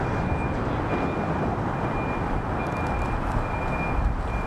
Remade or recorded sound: recorded